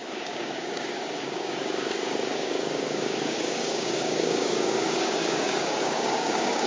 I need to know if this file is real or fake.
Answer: fake